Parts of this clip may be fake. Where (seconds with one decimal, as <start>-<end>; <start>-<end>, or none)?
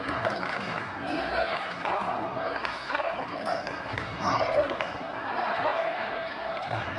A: 0.0-7.0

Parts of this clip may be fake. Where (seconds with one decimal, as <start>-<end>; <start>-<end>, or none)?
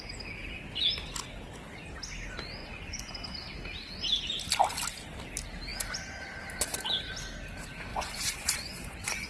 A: 2.6-3.1; 7.9-9.3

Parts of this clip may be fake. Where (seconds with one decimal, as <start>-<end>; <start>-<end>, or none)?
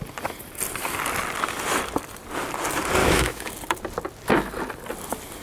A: 3.0-3.5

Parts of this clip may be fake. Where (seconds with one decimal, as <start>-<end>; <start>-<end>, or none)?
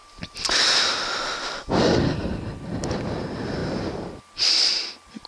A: none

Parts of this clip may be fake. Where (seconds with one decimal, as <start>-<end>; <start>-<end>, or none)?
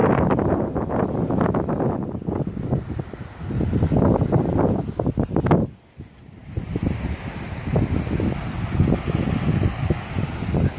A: 0.0-1.4; 6.4-7.7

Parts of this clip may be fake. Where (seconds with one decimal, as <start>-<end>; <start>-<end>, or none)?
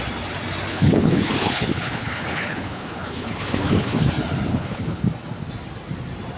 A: 0.7-4.1; 4.5-5.0